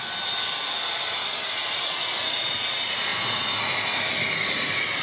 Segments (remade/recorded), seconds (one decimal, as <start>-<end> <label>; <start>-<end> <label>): 0.0-5.0 recorded